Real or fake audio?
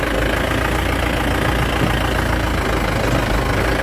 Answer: real